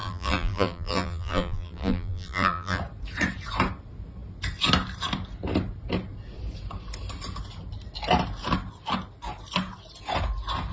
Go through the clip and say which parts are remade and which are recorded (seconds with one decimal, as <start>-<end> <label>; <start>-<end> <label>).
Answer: 0.0-2.8 remade; 2.8-10.7 recorded